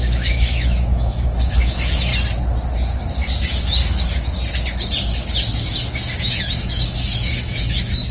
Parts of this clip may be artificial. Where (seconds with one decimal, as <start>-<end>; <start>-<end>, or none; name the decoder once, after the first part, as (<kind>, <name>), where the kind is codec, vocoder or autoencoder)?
0.0-2.1 (autoencoder, DAC-VAE); 6.2-8.1